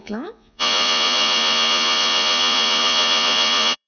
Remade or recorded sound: remade